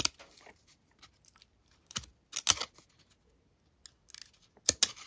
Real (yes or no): yes